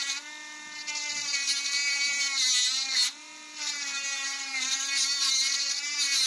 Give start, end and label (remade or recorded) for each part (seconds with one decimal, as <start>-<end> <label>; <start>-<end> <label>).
0.0-6.3 recorded